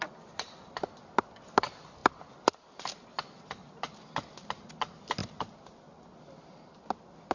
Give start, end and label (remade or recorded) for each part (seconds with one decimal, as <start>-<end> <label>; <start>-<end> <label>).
0.0-7.3 recorded